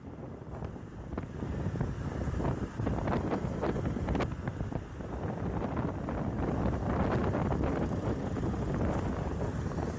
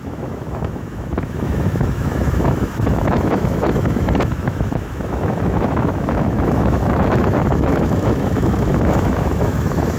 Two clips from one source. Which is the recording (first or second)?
first